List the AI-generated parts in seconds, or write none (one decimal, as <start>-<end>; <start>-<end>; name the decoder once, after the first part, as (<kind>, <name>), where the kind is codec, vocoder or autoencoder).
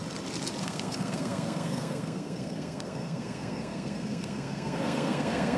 0.6-5.6 (codec, SNAC)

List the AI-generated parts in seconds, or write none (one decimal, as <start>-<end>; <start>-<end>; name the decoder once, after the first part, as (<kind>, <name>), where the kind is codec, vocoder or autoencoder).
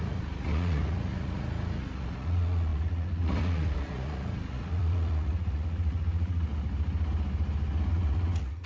0.0-6.5 (vocoder, Vocos); 7.9-8.7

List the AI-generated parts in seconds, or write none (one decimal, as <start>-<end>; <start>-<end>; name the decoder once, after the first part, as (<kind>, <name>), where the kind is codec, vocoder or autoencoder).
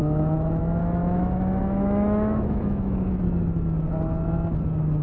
0.0-0.6 (autoencoder, DAC-VAE); 1.0-3.1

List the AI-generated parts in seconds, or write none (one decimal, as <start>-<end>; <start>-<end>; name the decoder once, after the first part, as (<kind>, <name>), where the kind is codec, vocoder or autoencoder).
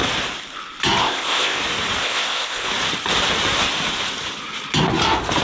1.0-1.6 (codec, ZipCodec); 2.0-2.7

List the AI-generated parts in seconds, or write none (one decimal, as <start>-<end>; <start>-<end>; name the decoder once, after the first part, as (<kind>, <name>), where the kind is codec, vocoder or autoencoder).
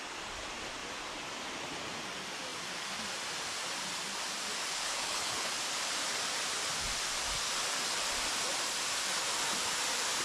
4.6-5.5 (codec, HILCodec)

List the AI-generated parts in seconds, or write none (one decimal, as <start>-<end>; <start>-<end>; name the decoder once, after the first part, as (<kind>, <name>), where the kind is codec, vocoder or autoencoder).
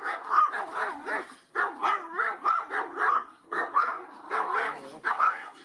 0.0-0.4 (codec, SNAC); 3.1-4.0; 5.1-5.6